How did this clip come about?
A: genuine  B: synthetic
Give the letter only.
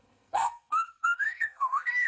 B